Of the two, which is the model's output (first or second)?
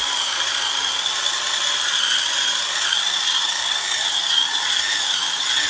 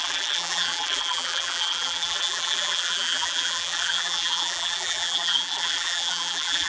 second